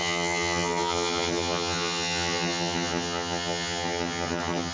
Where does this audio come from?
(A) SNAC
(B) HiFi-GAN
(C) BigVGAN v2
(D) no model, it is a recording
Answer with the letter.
B